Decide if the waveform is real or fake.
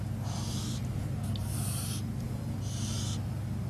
real